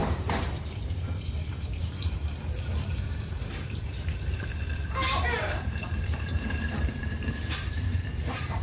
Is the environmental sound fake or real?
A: fake